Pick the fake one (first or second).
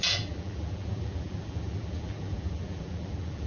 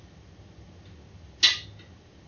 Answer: first